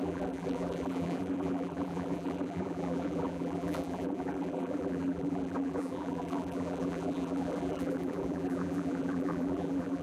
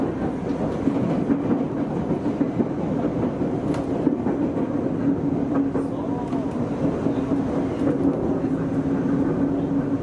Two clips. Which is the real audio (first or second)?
second